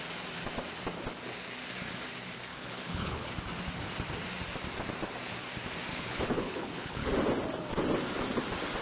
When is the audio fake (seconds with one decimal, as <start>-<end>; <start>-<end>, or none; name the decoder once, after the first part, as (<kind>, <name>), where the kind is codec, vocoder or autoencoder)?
2.5-3.3 (codec, HILCodec); 5.9-7.1